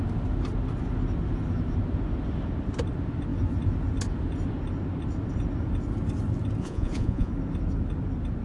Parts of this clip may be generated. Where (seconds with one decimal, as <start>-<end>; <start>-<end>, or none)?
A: 6.6-7.3